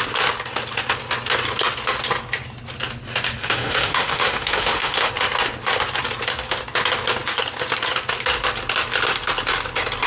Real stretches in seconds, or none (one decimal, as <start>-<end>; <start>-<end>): 0.0-3.4; 5.1-10.1